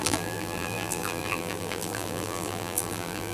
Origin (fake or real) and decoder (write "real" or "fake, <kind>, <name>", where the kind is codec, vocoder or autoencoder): fake, vocoder, BigVGAN v2